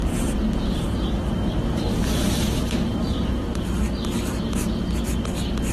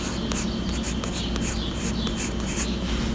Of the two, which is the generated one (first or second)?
first